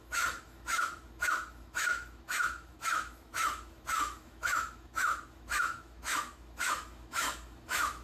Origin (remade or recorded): remade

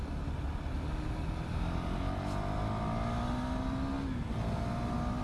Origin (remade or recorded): recorded